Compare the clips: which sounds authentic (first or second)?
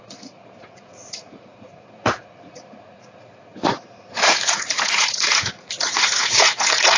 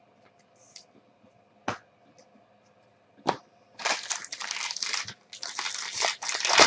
second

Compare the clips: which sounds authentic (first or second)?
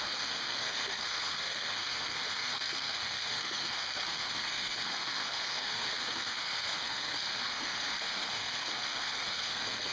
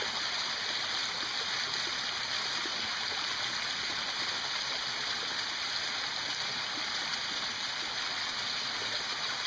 second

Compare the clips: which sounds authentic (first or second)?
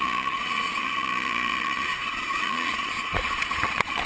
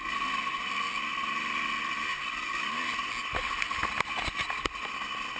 second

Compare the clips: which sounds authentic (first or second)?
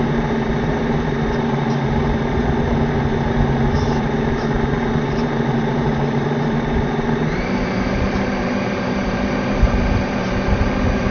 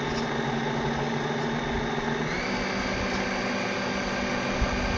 second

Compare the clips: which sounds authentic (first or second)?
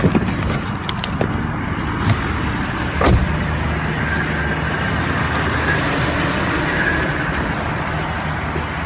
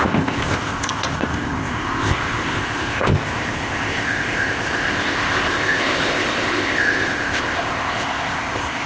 first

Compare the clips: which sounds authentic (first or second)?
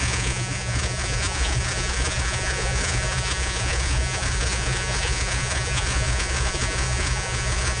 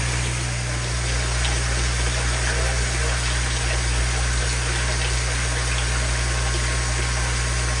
second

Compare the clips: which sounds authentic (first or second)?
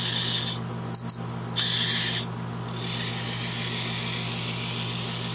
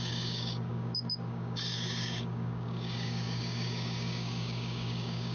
first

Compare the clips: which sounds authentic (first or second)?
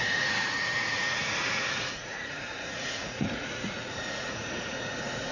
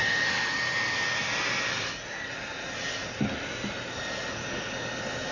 second